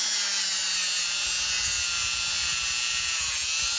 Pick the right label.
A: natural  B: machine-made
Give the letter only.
A